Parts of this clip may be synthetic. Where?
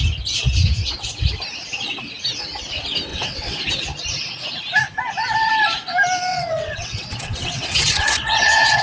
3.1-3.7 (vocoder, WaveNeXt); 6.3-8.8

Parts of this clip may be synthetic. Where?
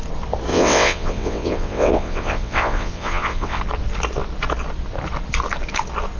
0.5-3.6 (vocoder, WaveNeXt)